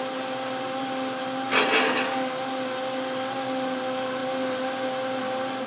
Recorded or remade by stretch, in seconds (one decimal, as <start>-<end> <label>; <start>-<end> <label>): 0.0-5.7 recorded

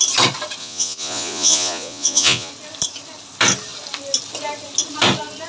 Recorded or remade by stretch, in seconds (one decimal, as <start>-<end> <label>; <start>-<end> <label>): 0.0-0.6 recorded; 0.6-2.5 remade; 2.5-5.5 recorded

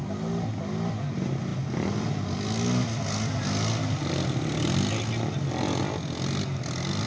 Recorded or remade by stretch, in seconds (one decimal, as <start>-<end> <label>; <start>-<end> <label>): 0.0-7.1 recorded

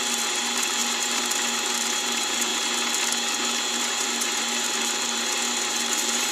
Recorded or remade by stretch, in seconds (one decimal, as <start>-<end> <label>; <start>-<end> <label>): 0.0-2.5 remade; 2.5-3.8 recorded; 3.8-6.3 remade

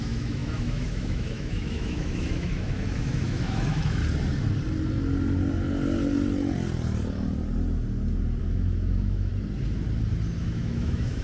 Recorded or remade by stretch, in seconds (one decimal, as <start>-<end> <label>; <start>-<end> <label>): 0.0-4.0 remade; 4.0-8.4 recorded; 8.4-9.3 remade; 9.3-10.4 recorded; 10.4-11.2 remade

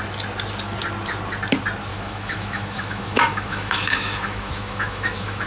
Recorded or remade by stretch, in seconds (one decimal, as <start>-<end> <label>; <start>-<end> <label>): 0.0-1.9 recorded; 1.9-5.5 remade

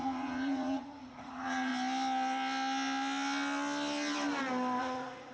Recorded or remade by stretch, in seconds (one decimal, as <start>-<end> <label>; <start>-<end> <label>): 0.0-1.7 remade; 1.7-4.8 recorded; 4.8-5.3 remade